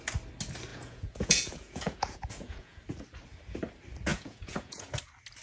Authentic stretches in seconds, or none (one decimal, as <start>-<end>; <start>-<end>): 0.0-0.7; 2.8-4.1; 4.9-5.4